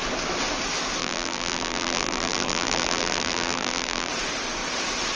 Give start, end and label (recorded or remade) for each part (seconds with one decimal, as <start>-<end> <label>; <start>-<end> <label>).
0.0-1.0 recorded; 1.0-4.1 remade; 4.1-5.2 recorded